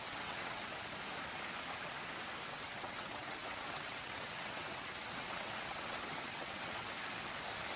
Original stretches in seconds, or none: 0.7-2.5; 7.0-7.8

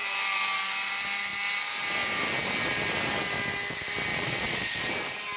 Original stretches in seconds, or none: 0.0-4.1; 4.9-5.4

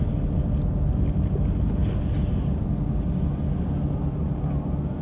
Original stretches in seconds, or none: 0.0-5.0

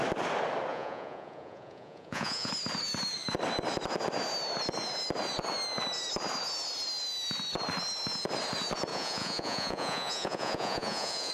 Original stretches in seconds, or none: 0.0-0.7; 2.5-8.9

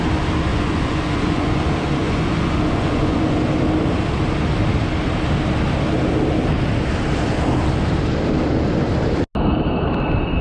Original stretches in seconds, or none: 0.0-0.5; 1.6-2.0; 3.4-10.4

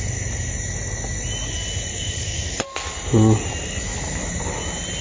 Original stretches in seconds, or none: 0.0-1.9; 2.4-5.0

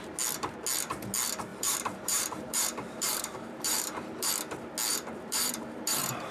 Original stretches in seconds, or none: 0.0-1.5; 4.3-4.9